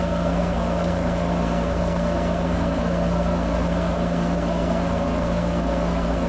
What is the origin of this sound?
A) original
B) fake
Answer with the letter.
B